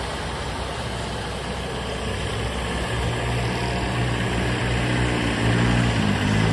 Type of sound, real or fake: real